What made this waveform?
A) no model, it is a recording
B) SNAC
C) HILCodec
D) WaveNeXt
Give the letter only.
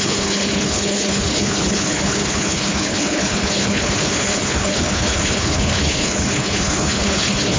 C